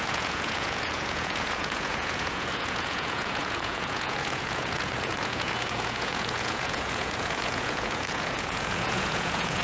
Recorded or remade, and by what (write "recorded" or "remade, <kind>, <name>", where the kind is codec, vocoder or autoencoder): remade, vocoder, Vocos